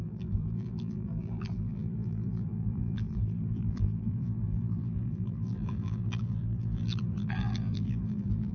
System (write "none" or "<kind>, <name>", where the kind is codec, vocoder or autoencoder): vocoder, BigVGAN v2